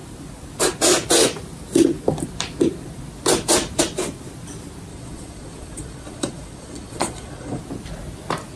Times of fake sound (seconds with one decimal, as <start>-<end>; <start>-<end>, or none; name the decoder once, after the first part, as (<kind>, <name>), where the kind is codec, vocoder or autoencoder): 4.9-7.6 (vocoder, Vocos)